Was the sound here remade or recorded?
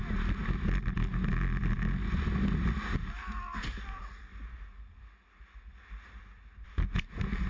recorded